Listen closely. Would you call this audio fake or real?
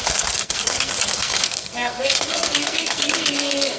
fake